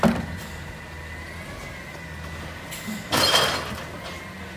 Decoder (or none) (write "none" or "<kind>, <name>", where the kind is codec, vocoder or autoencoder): none